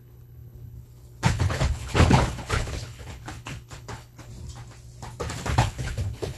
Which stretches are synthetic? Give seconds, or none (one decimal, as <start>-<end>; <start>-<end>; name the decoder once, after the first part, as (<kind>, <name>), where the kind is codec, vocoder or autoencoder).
0.0-4.3 (codec, HILCodec); 5.5-6.4